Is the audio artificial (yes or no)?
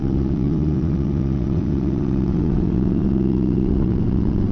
yes